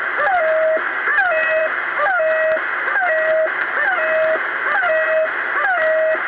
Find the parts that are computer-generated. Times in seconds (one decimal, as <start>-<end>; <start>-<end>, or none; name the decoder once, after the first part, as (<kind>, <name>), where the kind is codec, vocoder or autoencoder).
none